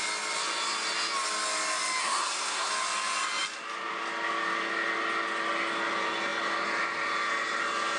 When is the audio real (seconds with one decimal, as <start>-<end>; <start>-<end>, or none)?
0.0-2.0; 2.7-8.0